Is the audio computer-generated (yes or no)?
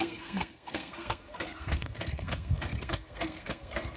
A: yes